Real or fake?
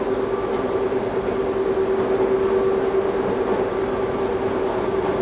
real